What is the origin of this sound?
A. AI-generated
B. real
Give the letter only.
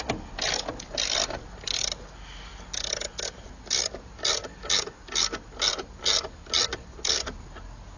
B